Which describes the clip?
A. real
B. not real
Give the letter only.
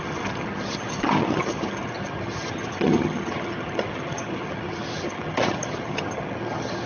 B